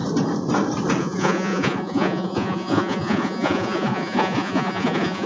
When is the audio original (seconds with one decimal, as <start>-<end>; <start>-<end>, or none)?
0.0-1.0